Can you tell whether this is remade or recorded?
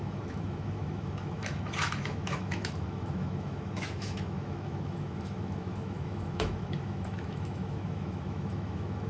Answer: remade